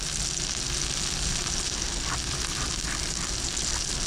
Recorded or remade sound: recorded